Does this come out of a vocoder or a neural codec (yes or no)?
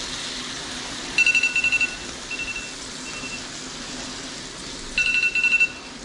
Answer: no